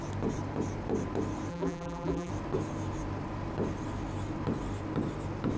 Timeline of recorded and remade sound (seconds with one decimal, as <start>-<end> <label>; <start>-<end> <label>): 0.0-1.5 recorded; 1.5-2.3 remade; 2.3-5.6 recorded